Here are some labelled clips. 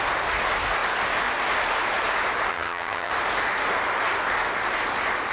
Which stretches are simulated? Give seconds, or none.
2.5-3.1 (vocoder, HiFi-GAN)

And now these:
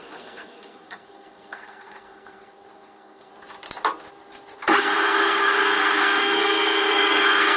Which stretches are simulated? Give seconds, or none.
0.0-3.3 (codec, SNAC); 4.8-7.6